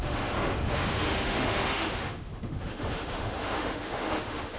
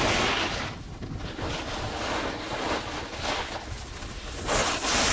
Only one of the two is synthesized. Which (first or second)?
first